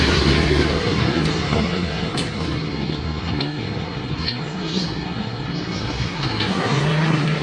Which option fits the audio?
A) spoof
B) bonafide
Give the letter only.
A